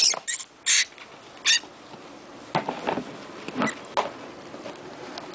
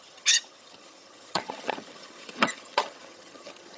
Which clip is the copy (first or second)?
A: second